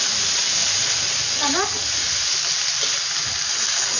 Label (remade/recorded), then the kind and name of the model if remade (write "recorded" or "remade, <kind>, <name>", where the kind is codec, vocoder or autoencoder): recorded